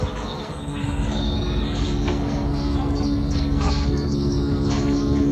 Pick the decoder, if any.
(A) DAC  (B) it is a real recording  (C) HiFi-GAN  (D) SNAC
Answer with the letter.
D